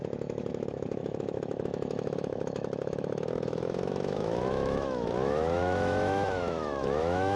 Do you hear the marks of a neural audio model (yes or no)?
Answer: yes